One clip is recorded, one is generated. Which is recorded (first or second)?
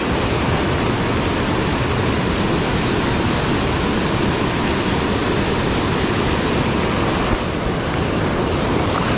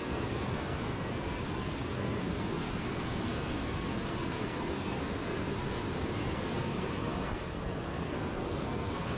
first